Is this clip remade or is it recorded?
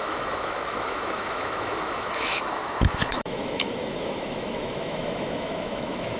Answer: remade